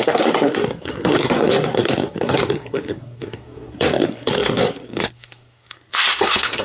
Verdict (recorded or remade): remade